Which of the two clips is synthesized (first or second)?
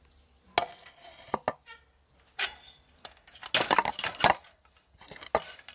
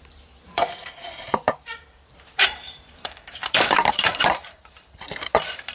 second